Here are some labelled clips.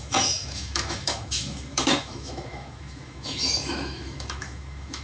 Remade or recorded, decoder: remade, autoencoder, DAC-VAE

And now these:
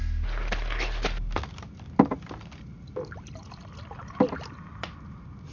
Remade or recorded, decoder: recorded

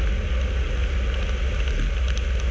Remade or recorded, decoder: recorded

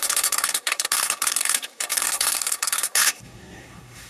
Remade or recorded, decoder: remade, codec, SNAC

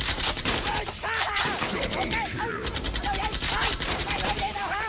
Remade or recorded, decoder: remade, vocoder, BigVGAN v2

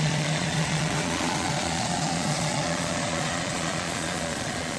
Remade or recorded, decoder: remade, vocoder, Vocos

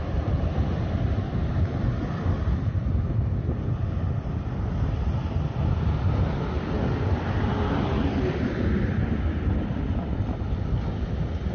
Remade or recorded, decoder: recorded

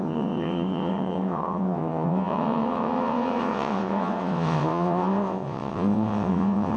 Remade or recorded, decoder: remade, vocoder, WaveNeXt